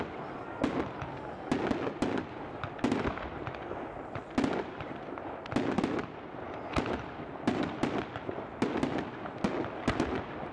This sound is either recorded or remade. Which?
recorded